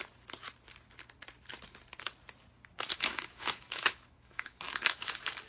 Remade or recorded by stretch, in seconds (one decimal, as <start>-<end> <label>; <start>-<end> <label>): 0.0-2.9 recorded; 2.9-5.1 remade; 5.1-5.5 recorded